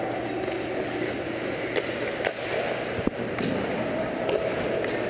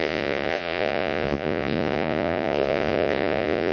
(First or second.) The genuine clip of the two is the first